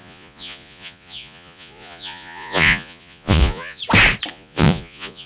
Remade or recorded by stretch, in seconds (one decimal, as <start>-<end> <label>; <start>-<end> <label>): 0.0-3.8 remade; 3.8-4.3 recorded; 4.3-5.3 remade